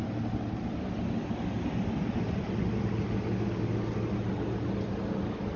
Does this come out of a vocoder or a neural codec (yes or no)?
no